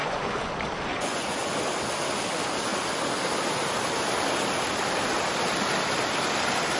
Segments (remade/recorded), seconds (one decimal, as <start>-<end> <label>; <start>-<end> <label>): 0.0-0.5 remade; 0.5-0.9 recorded; 0.9-1.5 remade; 1.5-6.8 recorded